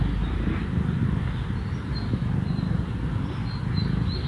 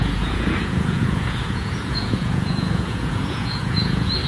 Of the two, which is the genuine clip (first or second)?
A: first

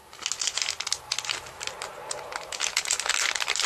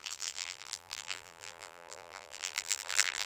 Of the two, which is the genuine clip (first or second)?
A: first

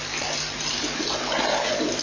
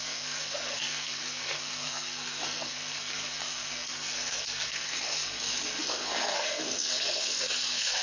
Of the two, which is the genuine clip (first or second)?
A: first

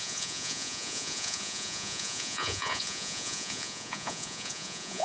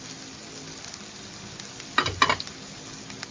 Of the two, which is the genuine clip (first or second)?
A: second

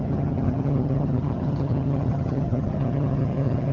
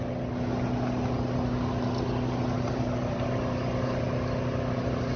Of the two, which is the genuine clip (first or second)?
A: second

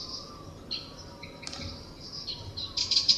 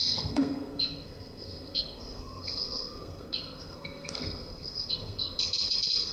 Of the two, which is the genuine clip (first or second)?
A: first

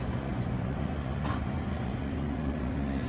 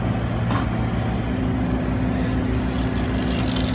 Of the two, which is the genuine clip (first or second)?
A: second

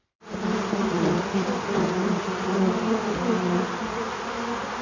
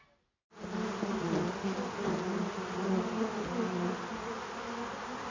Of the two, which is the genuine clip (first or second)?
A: second